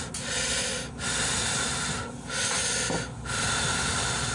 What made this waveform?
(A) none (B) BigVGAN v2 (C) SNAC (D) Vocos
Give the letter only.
A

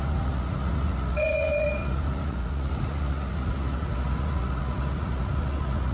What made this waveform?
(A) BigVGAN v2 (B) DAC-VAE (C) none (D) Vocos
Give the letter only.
D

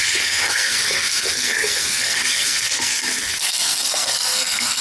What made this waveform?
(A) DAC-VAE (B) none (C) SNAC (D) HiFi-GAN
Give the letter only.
C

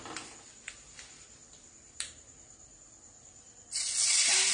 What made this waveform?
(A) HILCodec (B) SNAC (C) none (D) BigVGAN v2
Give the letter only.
C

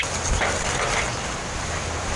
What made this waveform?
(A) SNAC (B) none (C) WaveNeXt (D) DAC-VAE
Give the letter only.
B